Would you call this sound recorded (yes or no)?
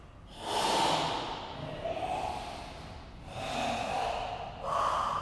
yes